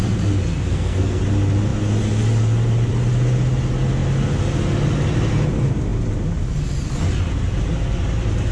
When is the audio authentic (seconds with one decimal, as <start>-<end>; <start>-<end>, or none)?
0.0-0.7; 1.2-8.5